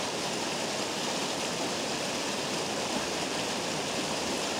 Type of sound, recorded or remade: recorded